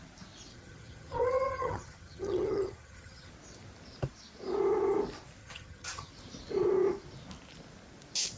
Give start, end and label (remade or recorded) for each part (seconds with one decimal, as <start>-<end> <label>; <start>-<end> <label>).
0.0-0.5 recorded; 0.5-3.3 remade; 3.3-5.4 recorded; 5.4-6.1 remade; 6.1-8.4 recorded